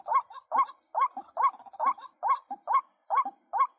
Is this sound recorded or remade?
recorded